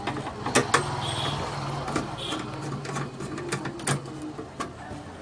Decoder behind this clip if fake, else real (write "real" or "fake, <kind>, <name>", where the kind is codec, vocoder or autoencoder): real